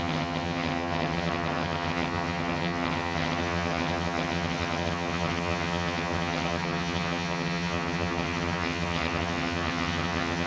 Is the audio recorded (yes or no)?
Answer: no